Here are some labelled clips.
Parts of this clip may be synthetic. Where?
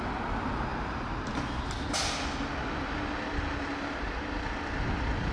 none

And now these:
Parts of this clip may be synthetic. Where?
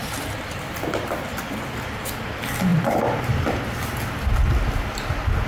2.7-3.3 (vocoder, BigVGAN v2)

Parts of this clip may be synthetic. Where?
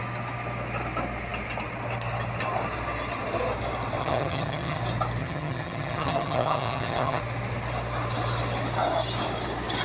4.0-4.8 (vocoder, HiFi-GAN); 5.2-7.2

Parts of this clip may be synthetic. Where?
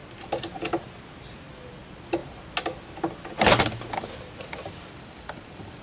none